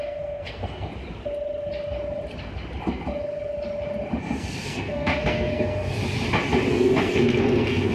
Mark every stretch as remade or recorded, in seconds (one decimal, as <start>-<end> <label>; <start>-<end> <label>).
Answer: 0.0-0.9 remade; 0.9-4.2 recorded; 4.2-6.0 remade; 6.0-6.7 recorded; 6.7-7.9 remade